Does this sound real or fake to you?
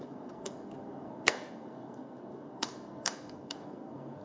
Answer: fake